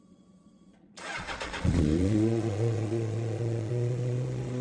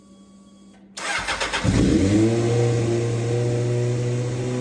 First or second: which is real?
second